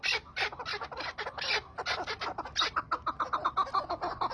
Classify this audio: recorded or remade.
recorded